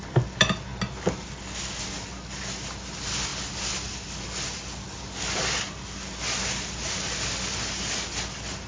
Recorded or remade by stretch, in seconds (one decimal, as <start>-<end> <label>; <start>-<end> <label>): 0.0-8.7 recorded